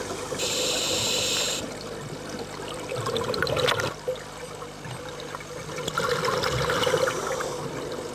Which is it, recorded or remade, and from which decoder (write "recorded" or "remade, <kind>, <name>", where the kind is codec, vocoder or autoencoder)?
recorded